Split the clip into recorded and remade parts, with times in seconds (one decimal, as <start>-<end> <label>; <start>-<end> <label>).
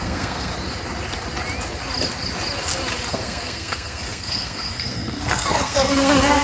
0.0-0.5 remade; 0.5-3.1 recorded; 3.1-6.4 remade